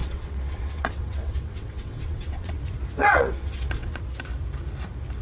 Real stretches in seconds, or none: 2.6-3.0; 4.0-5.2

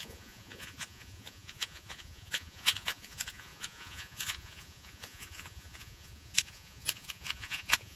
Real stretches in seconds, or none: none

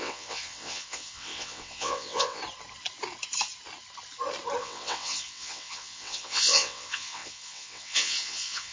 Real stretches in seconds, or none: 2.4-4.6

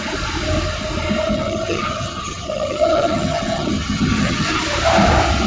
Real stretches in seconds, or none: 0.0-1.3; 4.6-5.5

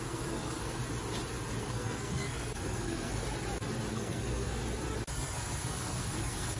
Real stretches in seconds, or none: 0.8-1.6; 3.2-3.9; 4.6-5.1

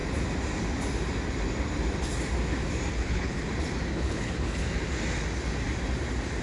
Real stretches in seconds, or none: 0.0-2.9; 3.5-3.9; 4.6-6.4

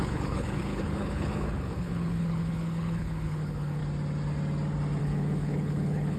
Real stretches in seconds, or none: 3.8-5.0

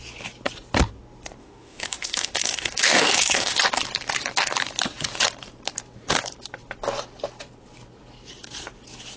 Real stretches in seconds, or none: 0.0-1.4; 3.6-9.2